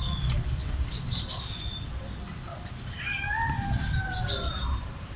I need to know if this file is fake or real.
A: real